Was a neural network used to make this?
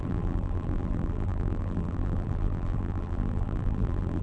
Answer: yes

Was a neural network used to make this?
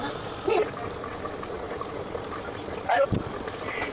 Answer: no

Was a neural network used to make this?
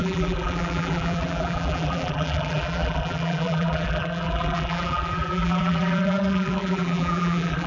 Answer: yes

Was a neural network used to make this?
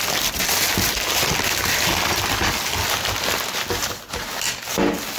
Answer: no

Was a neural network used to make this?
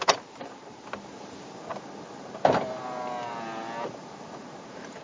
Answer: no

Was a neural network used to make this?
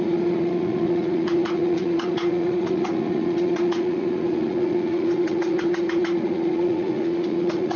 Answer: yes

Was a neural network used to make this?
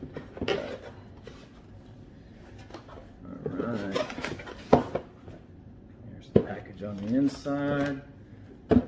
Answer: no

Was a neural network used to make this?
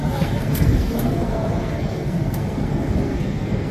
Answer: yes